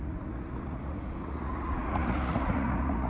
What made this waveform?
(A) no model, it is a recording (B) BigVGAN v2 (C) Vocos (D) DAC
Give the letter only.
C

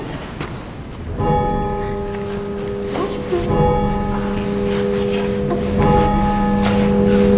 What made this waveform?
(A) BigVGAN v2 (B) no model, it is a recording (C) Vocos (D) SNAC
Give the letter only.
B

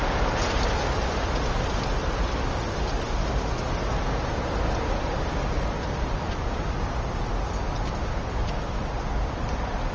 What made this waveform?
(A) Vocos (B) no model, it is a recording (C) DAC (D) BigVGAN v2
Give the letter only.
B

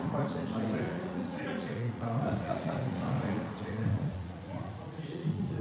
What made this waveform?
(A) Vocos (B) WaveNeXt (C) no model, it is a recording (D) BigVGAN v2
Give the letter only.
A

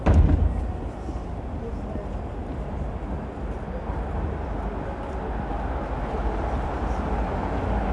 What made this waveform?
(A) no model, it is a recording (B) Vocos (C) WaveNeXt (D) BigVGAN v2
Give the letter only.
A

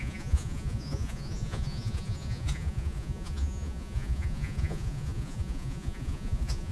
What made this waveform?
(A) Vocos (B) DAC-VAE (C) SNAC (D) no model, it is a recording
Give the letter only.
A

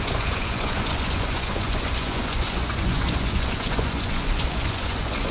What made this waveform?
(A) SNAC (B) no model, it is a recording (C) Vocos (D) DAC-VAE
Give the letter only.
C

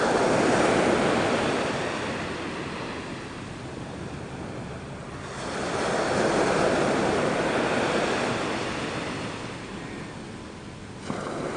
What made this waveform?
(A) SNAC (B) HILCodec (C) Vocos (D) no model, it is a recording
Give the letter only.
D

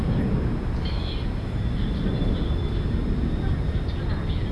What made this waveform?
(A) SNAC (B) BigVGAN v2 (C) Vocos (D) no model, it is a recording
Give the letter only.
D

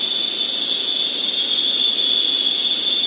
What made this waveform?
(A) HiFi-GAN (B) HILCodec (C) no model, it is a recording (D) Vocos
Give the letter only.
C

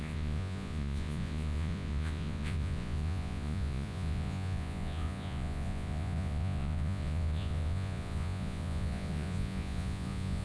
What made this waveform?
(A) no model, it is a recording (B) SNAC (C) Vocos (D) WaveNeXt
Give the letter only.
C